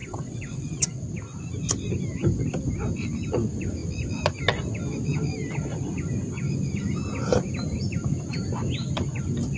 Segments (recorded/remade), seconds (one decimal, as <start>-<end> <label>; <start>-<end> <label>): 0.0-1.0 remade; 1.0-9.6 recorded